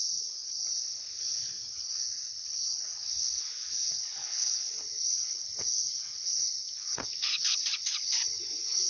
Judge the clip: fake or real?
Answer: fake